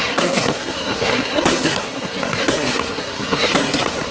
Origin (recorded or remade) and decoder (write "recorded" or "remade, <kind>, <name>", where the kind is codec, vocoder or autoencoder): remade, codec, SNAC